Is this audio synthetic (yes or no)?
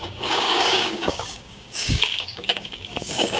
yes